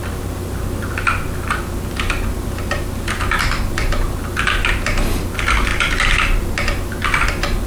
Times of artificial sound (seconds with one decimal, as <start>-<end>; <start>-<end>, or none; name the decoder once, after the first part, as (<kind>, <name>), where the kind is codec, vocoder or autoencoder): none